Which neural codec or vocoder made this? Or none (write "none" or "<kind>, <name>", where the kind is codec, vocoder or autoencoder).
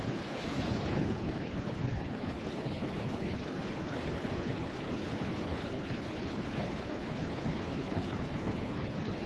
codec, HILCodec